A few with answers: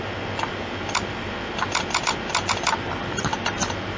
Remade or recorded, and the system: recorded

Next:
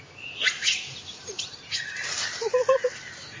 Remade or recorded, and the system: recorded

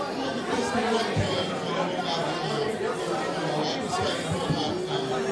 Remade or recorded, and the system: recorded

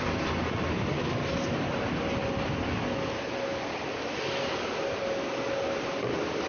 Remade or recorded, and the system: recorded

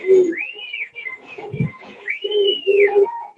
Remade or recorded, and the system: remade, vocoder, Vocos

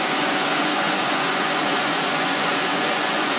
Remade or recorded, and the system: remade, vocoder, Vocos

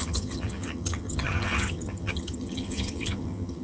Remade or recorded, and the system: remade, vocoder, HiFi-GAN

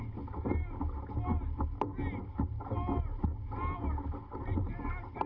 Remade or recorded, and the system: recorded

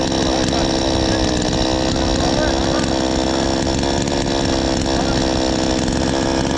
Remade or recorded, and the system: recorded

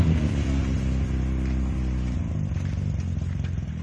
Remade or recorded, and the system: recorded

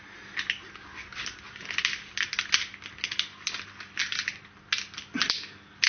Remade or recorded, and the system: recorded